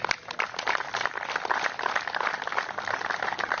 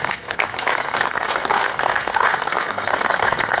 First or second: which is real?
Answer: first